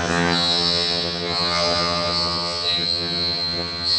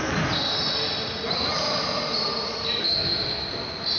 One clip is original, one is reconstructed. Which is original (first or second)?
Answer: second